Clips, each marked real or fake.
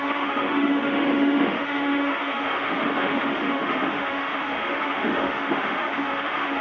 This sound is fake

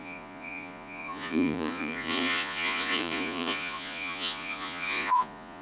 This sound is fake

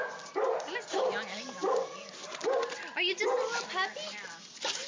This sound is real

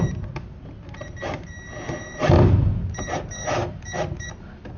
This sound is fake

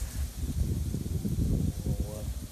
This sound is fake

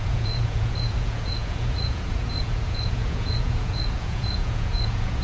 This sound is fake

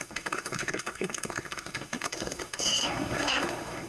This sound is fake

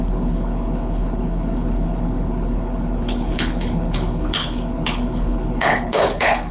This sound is fake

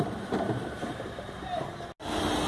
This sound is real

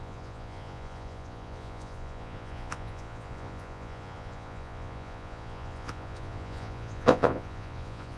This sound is fake